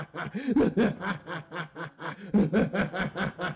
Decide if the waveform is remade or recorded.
recorded